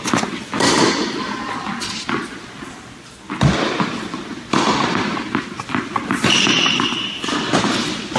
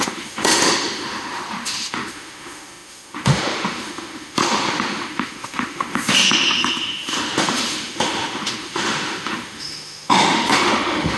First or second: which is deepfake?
second